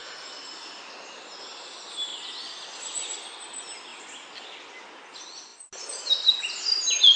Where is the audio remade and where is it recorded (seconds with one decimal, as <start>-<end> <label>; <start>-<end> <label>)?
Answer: 0.0-7.2 recorded